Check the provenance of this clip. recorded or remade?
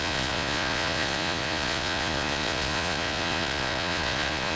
remade